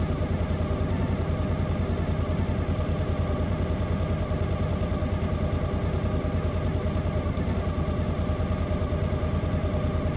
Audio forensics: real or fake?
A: real